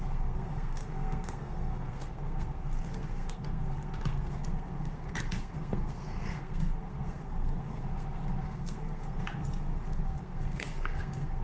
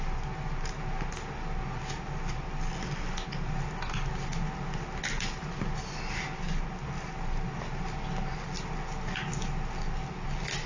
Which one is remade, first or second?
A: first